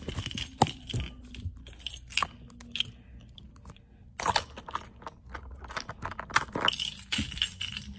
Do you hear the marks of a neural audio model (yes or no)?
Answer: no